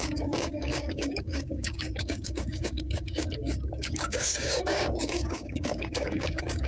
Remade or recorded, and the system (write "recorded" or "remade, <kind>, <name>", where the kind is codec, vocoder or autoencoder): remade, codec, DAC